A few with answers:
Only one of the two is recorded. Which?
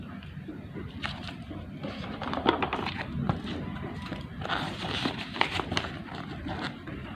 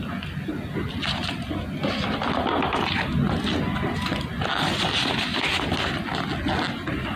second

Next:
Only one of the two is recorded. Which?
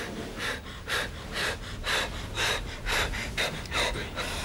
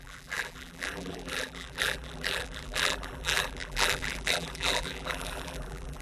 first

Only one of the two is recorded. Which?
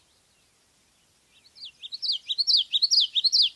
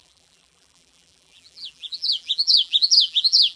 first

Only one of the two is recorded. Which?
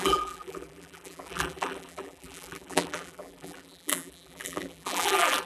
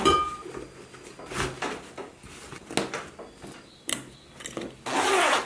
second